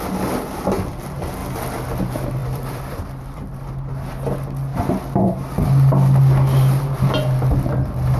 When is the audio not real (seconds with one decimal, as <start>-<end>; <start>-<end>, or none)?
2.4-3.7